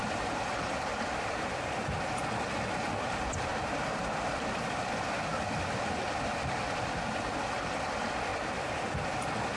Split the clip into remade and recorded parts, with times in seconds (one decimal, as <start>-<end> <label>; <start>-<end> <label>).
0.0-1.8 remade; 1.8-9.6 recorded